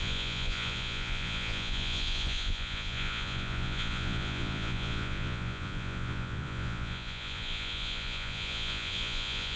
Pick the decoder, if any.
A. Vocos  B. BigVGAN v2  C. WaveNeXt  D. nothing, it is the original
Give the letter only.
A